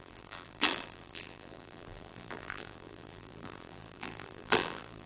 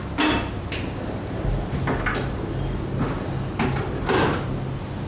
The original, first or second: second